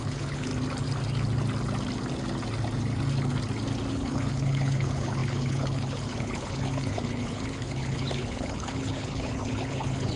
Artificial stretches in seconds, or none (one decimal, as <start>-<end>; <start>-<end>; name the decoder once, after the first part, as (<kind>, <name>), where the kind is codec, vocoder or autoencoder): 0.0-0.5 (codec, HILCodec); 3.9-10.2